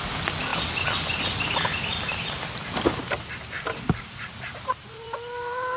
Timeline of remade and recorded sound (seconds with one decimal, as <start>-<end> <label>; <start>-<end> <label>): 0.0-1.9 recorded; 1.9-5.8 remade